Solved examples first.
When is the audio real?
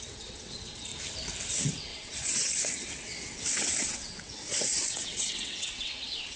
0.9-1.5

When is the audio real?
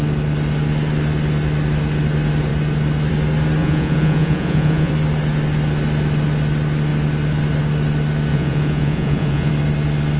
0.0-3.6; 4.9-8.3; 9.5-10.2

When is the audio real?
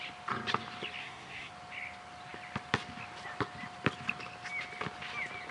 0.0-1.0; 1.5-5.5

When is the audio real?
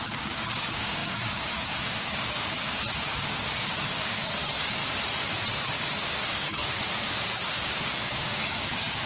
4.8-5.5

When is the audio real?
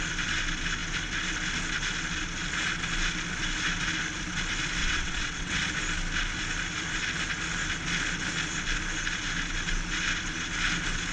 0.0-4.8; 5.6-11.1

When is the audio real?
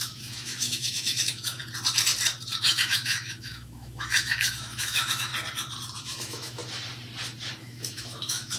1.6-2.6; 5.3-6.0; 6.6-7.6